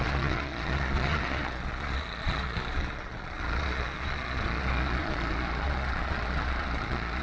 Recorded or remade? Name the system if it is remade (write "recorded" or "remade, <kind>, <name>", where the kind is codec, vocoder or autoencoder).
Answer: remade, vocoder, Vocos